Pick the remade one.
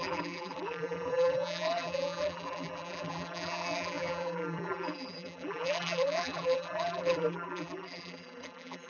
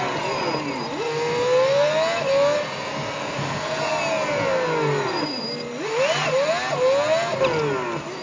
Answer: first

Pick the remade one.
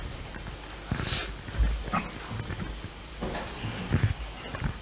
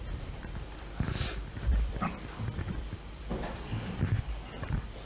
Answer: second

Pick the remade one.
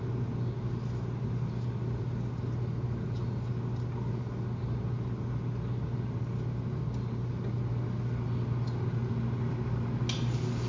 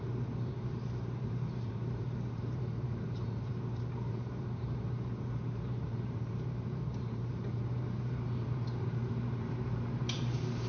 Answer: second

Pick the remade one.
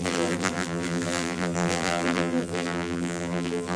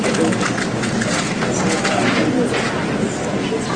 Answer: first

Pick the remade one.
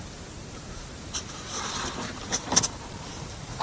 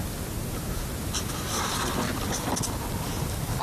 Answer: first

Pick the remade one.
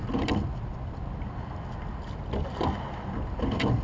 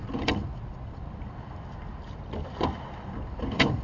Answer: second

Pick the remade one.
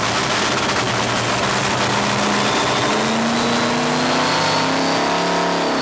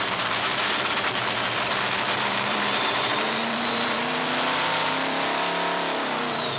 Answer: second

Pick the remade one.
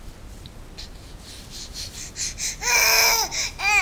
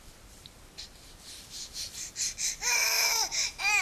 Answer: second